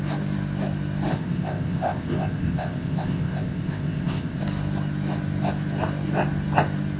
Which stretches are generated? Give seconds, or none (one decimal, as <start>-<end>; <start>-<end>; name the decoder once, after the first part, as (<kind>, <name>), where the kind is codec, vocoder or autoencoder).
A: 1.1-4.4 (codec, ZipCodec)